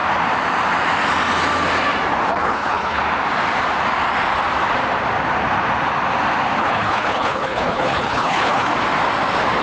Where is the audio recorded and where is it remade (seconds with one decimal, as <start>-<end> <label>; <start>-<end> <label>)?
0.0-2.3 recorded; 2.3-3.0 remade; 3.0-6.6 recorded; 6.6-8.7 remade; 8.7-9.6 recorded